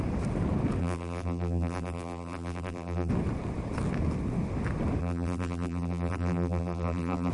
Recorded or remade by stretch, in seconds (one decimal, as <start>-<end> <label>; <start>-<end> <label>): 0.0-0.8 recorded; 0.8-3.1 remade; 3.1-5.0 recorded; 5.0-7.3 remade